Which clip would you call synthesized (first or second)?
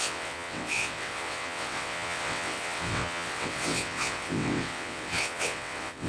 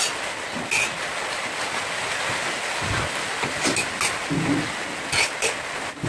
first